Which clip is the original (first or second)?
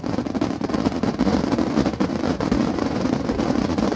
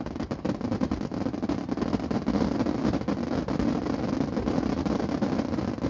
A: second